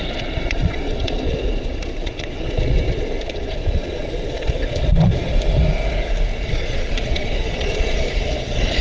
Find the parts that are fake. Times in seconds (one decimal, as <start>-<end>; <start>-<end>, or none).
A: 0.0-5.3; 6.5-8.8